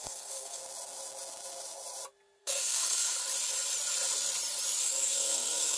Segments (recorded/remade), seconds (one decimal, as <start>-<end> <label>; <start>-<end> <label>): 0.0-0.6 remade; 0.6-2.4 recorded; 2.4-3.2 remade; 3.2-4.8 recorded; 4.8-5.8 remade